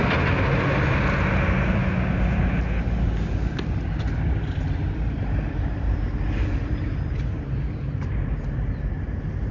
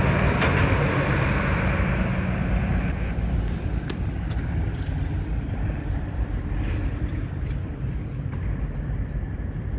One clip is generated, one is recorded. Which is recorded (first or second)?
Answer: first